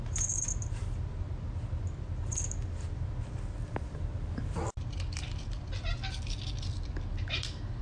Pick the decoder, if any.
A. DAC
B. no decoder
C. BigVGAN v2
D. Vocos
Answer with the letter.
B